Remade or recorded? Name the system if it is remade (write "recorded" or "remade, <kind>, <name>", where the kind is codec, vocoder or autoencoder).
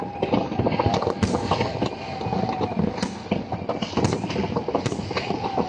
recorded